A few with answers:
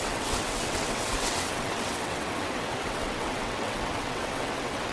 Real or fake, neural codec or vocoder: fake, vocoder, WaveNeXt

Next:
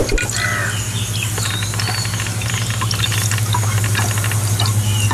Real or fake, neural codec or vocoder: real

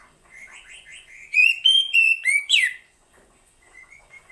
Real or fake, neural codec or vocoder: fake, vocoder, Vocos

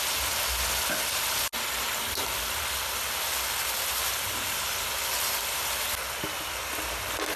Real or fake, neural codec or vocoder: real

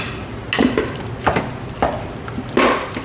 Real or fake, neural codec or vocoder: real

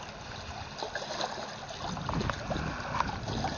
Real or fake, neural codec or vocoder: real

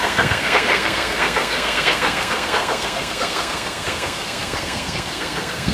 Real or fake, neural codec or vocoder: fake, codec, SNAC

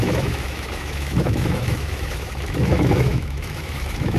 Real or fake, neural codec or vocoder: fake, autoencoder, DAC-VAE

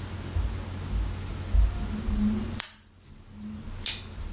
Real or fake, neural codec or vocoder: real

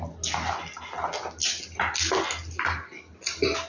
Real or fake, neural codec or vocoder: real